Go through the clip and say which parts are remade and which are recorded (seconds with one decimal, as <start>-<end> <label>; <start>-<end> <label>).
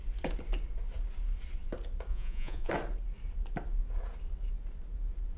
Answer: 0.0-2.1 recorded; 2.1-2.7 remade; 2.7-5.4 recorded